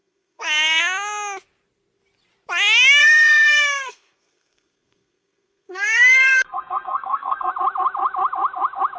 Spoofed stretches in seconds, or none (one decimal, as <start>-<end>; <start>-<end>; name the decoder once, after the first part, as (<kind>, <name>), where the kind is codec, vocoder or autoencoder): 0.0-0.8 (codec, SNAC); 3.0-7.5